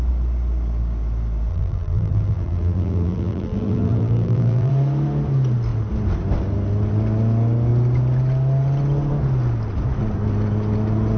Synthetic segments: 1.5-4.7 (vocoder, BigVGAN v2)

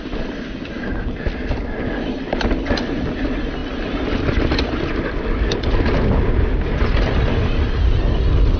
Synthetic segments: none